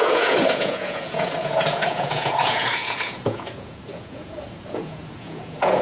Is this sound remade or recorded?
remade